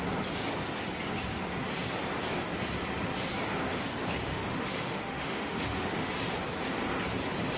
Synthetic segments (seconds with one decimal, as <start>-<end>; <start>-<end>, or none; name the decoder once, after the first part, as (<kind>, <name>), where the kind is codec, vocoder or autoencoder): 4.3-6.1 (autoencoder, DAC-VAE)